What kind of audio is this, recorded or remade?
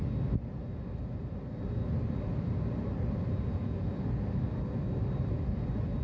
recorded